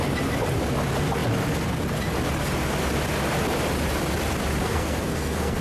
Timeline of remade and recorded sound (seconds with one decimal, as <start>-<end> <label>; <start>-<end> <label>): 0.0-4.6 recorded; 4.6-5.6 remade